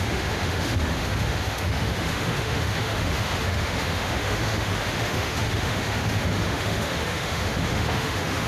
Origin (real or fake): fake